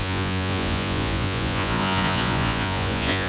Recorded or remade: remade